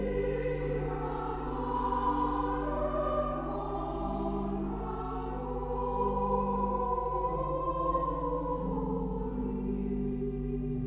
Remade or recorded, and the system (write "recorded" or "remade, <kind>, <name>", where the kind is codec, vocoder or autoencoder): recorded